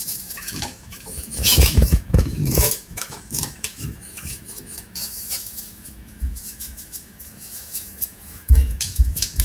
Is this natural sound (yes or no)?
no